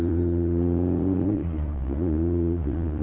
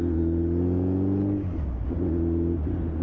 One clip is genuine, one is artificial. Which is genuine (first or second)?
second